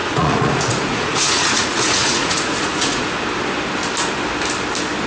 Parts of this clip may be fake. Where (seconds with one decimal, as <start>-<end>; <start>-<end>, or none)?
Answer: 0.0-3.1

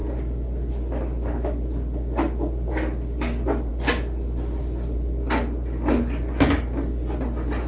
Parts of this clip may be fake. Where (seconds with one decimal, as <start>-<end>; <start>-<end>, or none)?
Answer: none